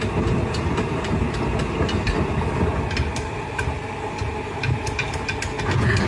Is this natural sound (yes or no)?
yes